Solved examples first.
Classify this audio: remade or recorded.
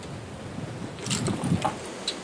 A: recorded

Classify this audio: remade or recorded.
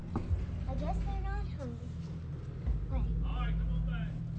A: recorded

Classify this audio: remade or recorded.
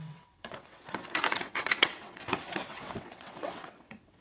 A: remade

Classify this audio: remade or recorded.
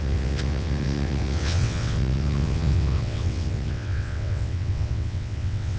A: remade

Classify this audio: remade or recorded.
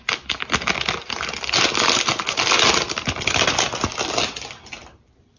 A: recorded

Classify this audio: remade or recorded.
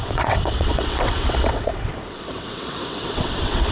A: remade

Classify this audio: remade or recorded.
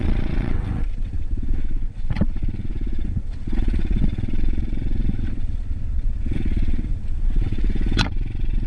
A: remade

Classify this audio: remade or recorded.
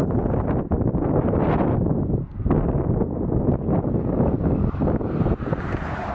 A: recorded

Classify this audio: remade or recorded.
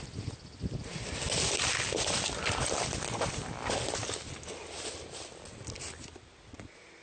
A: recorded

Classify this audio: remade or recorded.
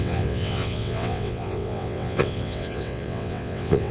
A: remade